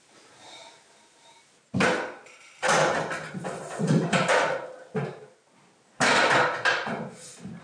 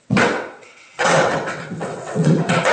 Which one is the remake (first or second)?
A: second